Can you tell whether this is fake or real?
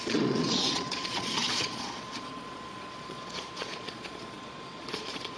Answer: fake